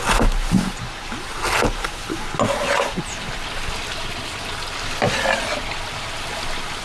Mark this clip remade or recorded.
recorded